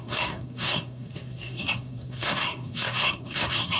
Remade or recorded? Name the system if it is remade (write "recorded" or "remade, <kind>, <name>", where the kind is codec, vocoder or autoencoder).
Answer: remade, codec, SNAC